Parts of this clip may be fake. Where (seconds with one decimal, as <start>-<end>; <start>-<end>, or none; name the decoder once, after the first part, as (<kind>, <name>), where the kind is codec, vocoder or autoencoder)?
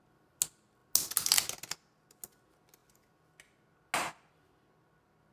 none